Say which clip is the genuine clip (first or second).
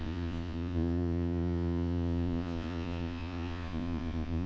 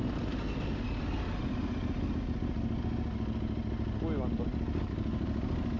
second